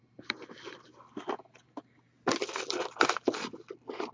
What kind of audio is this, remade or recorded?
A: recorded